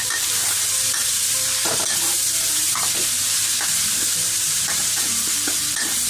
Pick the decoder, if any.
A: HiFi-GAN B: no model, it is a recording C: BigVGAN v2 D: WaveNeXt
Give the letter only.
C